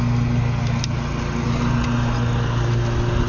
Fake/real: real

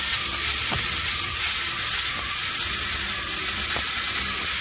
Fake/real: real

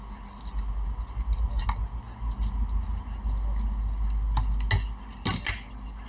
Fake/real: real